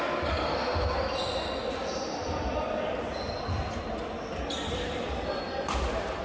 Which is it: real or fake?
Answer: real